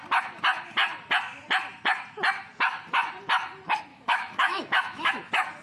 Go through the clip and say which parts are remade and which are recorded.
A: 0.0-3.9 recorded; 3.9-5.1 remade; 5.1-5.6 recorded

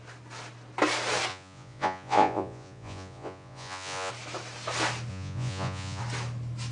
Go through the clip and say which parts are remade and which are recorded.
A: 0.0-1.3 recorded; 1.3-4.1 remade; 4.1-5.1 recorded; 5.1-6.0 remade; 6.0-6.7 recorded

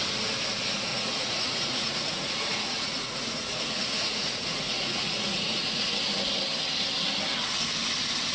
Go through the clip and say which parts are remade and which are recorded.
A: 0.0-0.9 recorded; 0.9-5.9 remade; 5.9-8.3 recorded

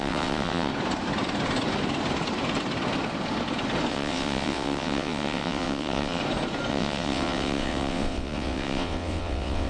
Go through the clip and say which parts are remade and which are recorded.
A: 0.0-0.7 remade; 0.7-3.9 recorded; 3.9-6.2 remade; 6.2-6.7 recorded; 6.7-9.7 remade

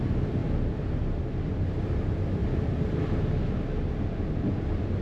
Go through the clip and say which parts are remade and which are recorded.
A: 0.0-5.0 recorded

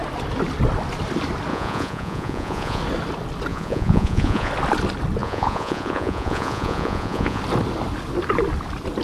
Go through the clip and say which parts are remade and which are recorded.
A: 0.0-1.5 recorded; 1.5-2.8 remade; 2.8-3.5 recorded; 3.5-4.5 remade; 4.5-5.2 recorded; 5.2-7.4 remade; 7.4-9.0 recorded

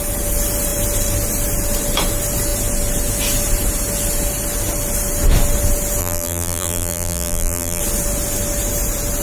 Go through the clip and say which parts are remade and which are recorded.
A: 0.0-6.0 recorded; 6.0-7.8 remade; 7.8-9.2 recorded